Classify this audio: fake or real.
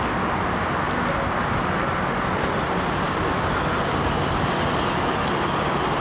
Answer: real